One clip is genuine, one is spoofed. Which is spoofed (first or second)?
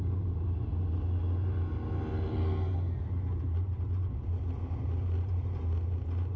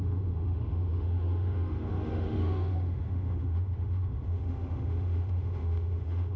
second